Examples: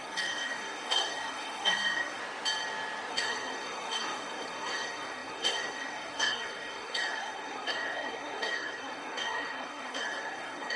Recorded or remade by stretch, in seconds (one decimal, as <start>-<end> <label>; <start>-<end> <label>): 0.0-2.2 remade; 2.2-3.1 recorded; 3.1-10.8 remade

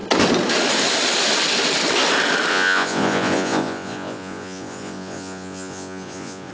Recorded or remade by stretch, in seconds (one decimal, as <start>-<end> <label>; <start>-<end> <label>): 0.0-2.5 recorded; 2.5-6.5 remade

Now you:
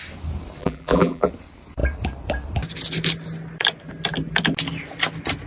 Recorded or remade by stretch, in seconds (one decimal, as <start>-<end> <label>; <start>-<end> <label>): 0.0-0.6 recorded; 0.6-1.3 remade; 1.3-5.5 recorded